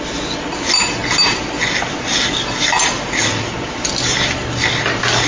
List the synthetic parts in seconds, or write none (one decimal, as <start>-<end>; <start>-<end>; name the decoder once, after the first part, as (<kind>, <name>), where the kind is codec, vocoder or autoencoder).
none